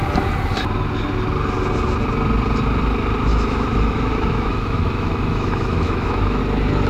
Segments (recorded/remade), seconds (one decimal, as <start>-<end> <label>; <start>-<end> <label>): 0.0-3.3 recorded; 3.3-6.4 remade; 6.4-6.9 recorded